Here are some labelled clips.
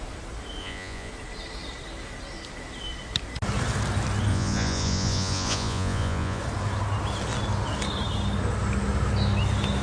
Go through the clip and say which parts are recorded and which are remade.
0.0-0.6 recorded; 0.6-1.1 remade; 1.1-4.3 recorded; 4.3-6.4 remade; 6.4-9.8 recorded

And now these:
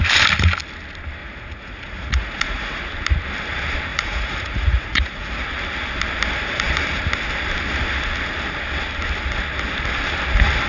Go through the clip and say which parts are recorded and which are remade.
0.0-1.2 recorded; 1.2-2.8 remade; 2.8-3.9 recorded; 3.9-5.4 remade; 5.4-10.7 recorded

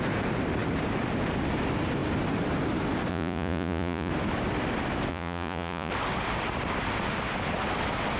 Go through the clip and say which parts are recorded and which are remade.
0.0-3.1 recorded; 3.1-4.1 remade; 4.1-5.1 recorded; 5.1-5.9 remade; 5.9-8.2 recorded

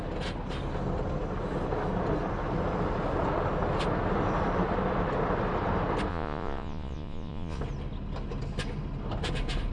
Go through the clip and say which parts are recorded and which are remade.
0.0-6.1 recorded; 6.1-7.6 remade; 7.6-9.7 recorded

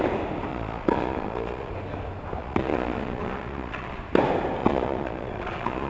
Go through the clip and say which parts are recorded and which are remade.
0.0-0.5 recorded; 0.5-1.7 remade; 1.7-2.4 recorded; 2.4-4.0 remade; 4.0-4.6 recorded; 4.6-5.9 remade

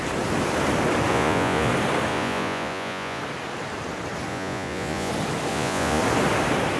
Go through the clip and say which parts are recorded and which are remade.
0.0-1.1 recorded; 1.1-1.7 remade; 1.7-2.1 recorded; 2.1-3.2 remade; 3.2-4.3 recorded; 4.3-5.1 remade; 5.1-5.5 recorded; 5.5-6.0 remade; 6.0-6.8 recorded

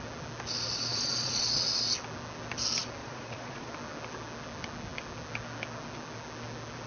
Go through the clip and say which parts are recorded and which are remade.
0.0-0.9 recorded; 0.9-1.4 remade; 1.4-3.0 recorded; 3.0-3.7 remade; 3.7-6.9 recorded